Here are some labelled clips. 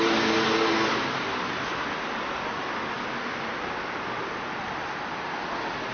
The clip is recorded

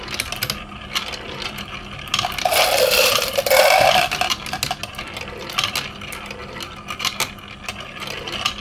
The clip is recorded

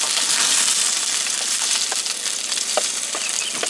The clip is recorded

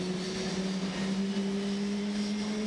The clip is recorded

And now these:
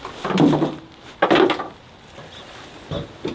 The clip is recorded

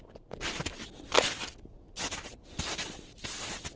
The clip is recorded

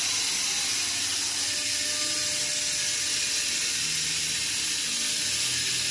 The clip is recorded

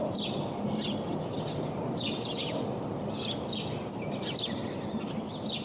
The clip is recorded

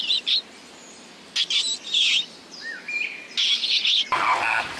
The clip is recorded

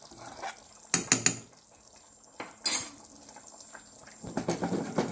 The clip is recorded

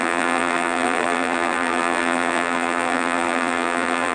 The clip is remade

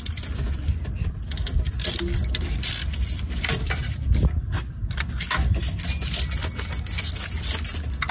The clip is recorded